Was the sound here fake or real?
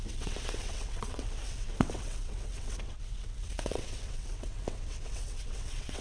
fake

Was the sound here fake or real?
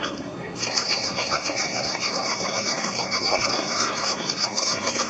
fake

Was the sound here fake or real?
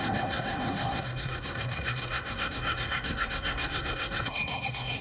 fake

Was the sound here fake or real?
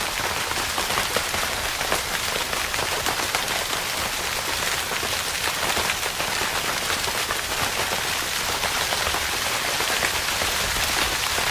fake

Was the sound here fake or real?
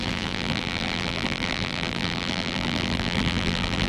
fake